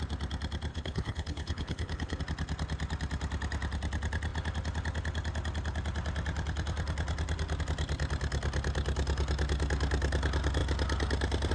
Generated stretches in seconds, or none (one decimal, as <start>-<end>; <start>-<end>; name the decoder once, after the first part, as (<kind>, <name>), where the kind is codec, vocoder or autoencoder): 0.7-2.2 (codec, HILCodec)